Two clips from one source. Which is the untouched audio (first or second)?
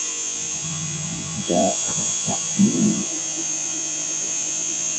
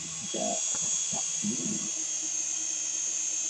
second